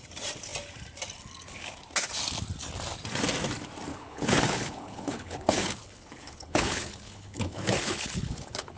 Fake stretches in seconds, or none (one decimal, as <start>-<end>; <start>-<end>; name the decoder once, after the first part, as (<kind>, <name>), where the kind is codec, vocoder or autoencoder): 3.9-8.8 (codec, HILCodec)